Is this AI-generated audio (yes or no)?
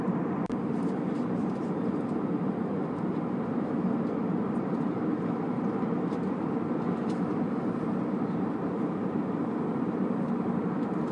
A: yes